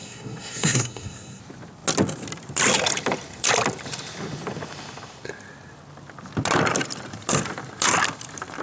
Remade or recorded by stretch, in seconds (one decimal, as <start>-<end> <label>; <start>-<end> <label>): 0.0-1.4 remade; 1.4-8.6 recorded